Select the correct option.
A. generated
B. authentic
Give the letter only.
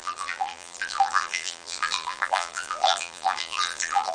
A